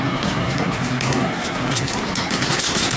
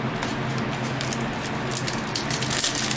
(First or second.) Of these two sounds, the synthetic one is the first